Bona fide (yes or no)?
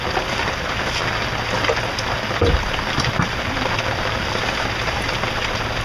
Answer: yes